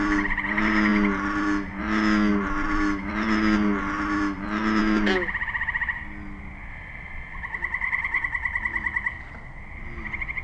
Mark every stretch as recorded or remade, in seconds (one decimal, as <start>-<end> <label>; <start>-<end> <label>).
0.0-10.4 recorded